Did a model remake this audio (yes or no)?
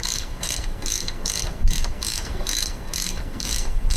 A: yes